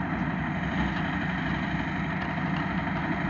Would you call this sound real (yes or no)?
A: yes